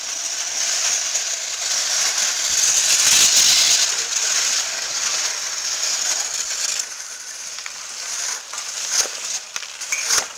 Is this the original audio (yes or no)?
yes